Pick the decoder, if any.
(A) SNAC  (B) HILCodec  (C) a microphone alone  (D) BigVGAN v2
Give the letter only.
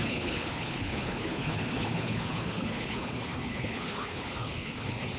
B